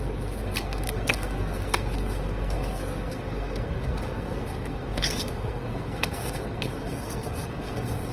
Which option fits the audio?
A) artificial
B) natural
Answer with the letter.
A